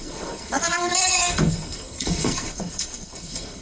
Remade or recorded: remade